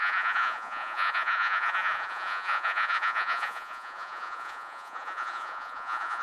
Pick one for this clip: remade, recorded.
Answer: remade